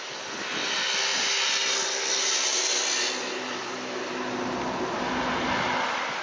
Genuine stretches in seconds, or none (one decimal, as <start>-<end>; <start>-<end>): 0.0-6.2